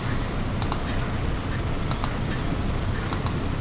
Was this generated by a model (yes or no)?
no